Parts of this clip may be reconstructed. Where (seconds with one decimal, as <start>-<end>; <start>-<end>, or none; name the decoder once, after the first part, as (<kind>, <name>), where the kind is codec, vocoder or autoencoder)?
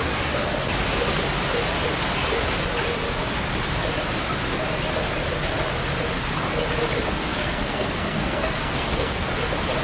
7.3-9.3 (codec, SNAC)